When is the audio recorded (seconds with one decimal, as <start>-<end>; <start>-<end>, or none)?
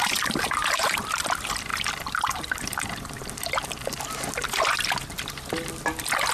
1.0-6.3